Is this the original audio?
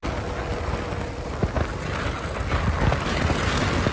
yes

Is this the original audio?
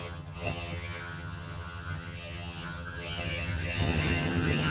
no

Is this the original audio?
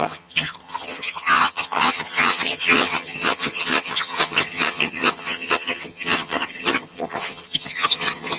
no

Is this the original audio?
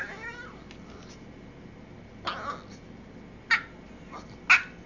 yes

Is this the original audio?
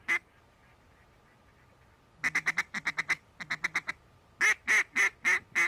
yes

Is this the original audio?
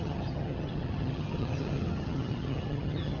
no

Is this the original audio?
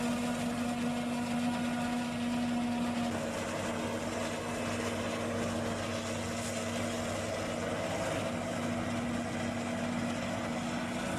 yes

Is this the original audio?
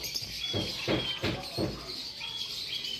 yes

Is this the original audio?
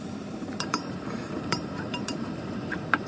no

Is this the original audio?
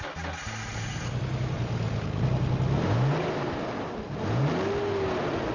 yes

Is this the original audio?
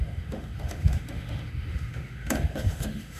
no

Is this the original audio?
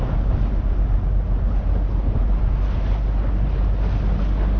yes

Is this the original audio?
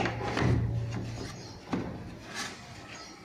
yes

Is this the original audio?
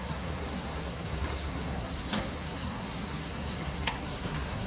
no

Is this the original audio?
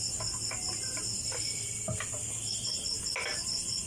yes